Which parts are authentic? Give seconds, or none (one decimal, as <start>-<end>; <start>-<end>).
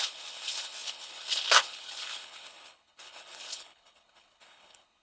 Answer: none